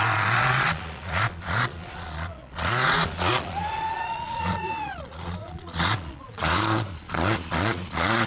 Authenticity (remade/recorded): remade